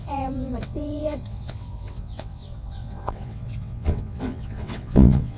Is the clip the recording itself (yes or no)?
no